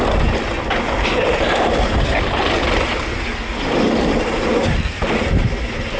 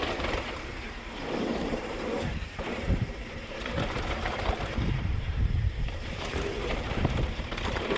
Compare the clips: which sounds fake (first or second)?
second